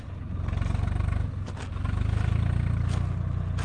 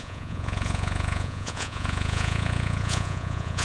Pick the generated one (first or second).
second